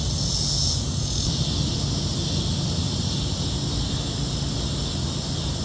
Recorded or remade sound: recorded